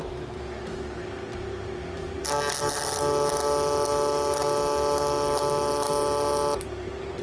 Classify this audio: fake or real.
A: real